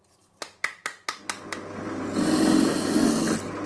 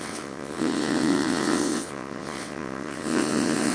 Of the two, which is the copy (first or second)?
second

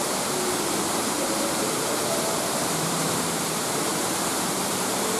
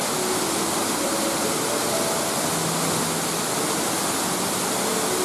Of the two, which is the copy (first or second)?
first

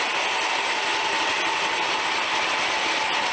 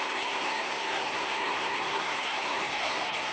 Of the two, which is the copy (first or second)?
second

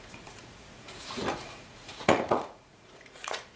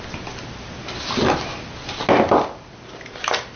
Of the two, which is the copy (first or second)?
first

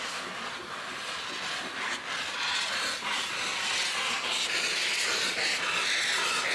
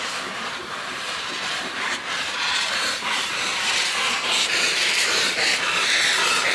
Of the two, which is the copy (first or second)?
second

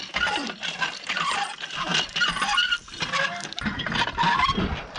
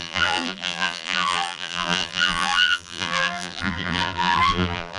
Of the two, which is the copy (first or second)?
second